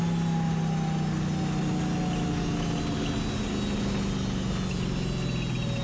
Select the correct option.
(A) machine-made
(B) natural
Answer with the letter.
B